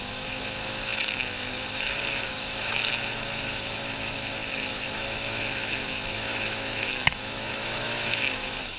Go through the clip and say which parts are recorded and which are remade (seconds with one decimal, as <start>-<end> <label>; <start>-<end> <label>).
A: 0.0-8.8 remade